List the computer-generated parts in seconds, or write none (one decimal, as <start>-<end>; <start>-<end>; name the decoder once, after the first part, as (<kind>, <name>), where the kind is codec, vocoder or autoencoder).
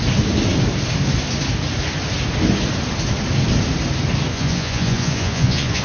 4.3-5.8 (vocoder, Vocos)